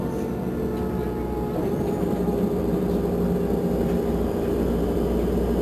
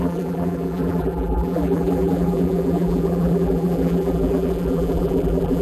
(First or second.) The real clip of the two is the first